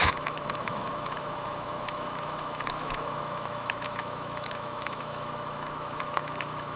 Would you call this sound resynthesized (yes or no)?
yes